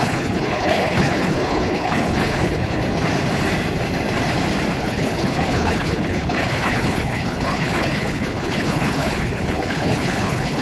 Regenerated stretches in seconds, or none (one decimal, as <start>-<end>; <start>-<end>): 0.0-2.8; 4.8-10.6